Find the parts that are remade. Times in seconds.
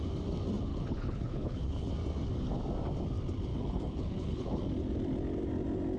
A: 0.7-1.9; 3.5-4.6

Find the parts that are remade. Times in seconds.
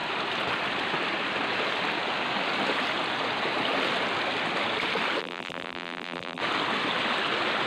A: 5.2-6.4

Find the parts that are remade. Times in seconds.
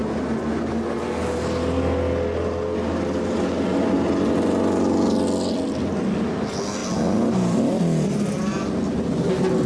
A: none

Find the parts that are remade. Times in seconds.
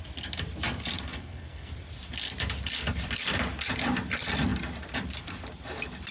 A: 1.1-1.7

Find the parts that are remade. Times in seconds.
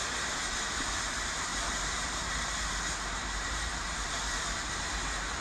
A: 1.5-4.7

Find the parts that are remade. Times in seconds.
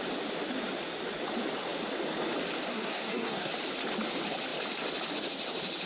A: 2.7-3.5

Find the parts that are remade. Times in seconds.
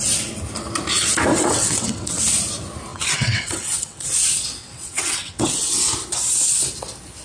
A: 1.3-2.2; 2.9-4.1; 4.6-5.8